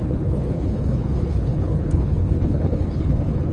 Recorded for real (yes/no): no